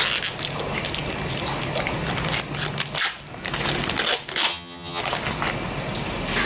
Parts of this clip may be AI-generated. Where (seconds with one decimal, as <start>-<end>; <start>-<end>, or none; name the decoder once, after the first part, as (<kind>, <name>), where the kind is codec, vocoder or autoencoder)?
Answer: 4.5-5.0 (vocoder, HiFi-GAN)